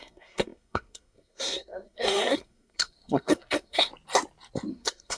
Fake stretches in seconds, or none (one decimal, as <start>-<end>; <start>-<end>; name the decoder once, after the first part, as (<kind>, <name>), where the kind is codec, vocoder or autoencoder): 0.0-3.9 (codec, SNAC); 4.7-5.2